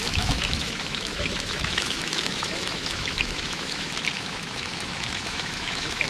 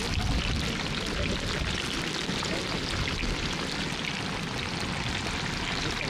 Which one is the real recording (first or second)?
second